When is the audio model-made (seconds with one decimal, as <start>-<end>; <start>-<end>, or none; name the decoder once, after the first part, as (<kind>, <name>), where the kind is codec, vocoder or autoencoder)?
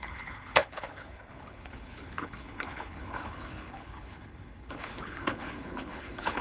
0.0-6.4 (codec, HILCodec)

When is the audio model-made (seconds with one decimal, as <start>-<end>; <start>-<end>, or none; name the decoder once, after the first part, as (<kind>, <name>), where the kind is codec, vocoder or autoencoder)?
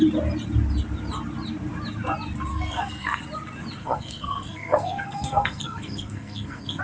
2.5-3.2 (codec, SNAC); 3.8-6.8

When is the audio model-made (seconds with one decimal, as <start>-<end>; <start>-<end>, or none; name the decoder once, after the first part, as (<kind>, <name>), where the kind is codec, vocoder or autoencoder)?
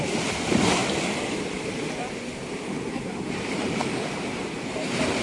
0.0-0.8 (vocoder, BigVGAN v2); 3.3-3.8; 4.4-5.2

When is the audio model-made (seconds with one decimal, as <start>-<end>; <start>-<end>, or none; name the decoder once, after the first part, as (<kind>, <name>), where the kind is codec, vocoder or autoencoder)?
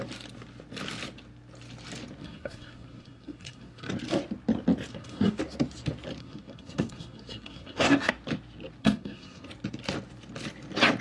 2.2-3.9 (codec, SNAC); 4.9-5.4; 6.2-8.1; 8.8-9.5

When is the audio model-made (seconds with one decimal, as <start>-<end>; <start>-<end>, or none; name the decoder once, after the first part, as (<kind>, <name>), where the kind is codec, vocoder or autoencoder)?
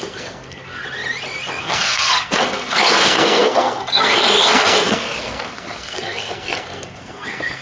0.0-0.8 (codec, SNAC); 1.6-7.6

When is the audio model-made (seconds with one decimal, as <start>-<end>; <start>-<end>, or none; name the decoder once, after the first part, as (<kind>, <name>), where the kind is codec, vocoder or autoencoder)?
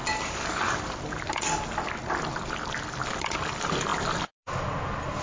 3.9-5.2 (vocoder, BigVGAN v2)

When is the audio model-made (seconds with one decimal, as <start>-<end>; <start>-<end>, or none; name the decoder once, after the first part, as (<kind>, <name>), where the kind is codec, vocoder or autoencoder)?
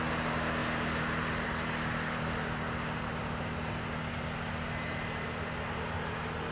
none